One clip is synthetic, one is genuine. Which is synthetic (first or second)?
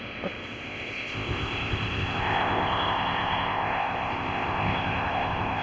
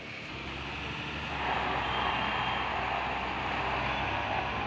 first